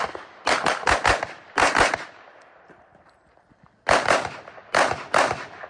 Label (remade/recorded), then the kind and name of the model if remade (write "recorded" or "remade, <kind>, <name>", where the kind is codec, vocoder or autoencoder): recorded